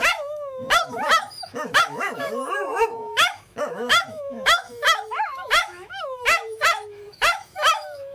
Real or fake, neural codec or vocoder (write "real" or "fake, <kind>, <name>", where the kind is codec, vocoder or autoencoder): fake, autoencoder, DAC-VAE